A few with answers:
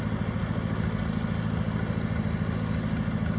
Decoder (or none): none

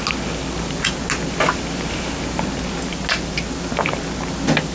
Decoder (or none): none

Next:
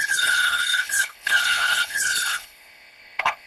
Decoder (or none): codec, HILCodec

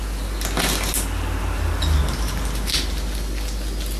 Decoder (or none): none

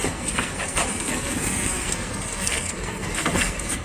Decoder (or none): codec, SNAC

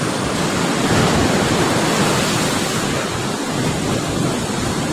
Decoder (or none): none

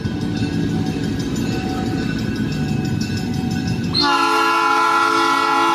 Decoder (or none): none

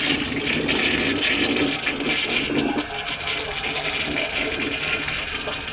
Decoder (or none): none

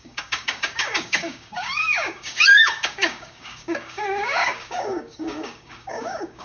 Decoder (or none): codec, DAC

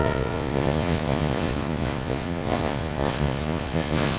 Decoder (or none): vocoder, Vocos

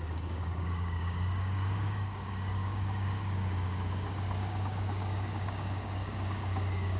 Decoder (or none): codec, DAC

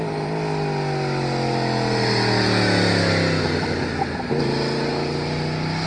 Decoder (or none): none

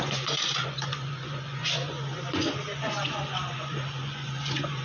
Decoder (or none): vocoder, Vocos